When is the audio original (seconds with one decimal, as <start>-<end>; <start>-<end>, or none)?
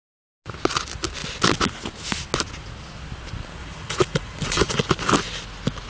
0.0-3.6; 4.9-5.9